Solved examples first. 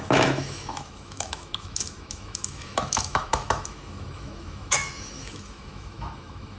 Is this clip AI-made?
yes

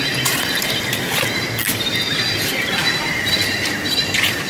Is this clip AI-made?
no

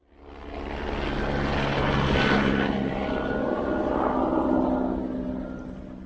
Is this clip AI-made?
no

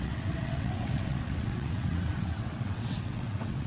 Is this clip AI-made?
yes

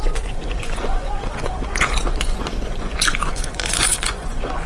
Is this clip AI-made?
yes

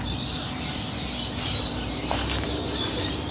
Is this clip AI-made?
yes